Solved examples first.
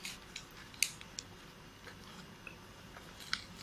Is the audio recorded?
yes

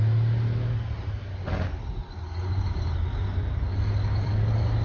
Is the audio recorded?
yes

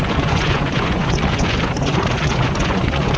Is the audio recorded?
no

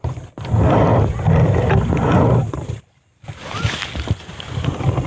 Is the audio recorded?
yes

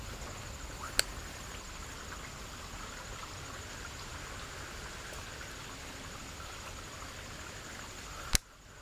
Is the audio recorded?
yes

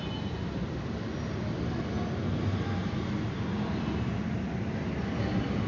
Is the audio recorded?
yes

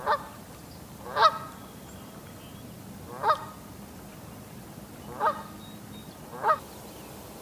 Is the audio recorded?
yes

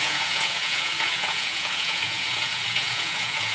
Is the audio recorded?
no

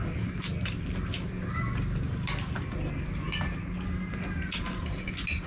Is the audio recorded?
yes